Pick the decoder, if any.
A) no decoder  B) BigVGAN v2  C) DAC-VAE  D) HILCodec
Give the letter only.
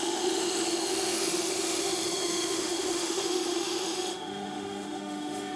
C